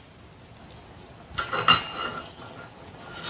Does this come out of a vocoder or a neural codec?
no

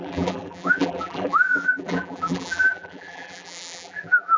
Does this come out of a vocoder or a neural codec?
yes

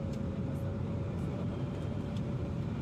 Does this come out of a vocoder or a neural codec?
yes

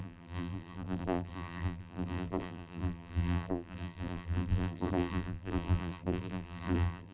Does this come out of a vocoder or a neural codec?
yes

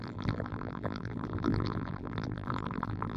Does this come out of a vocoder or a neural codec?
yes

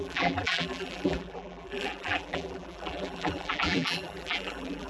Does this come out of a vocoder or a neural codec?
yes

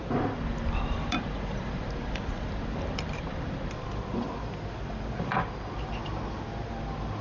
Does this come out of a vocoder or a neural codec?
yes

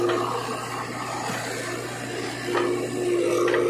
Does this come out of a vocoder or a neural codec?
no